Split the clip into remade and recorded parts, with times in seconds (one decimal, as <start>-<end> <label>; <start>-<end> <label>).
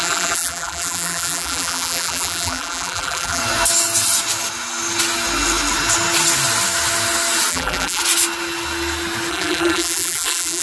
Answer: 0.0-3.4 remade; 3.4-7.5 recorded; 7.5-8.0 remade; 8.0-9.3 recorded; 9.3-10.6 remade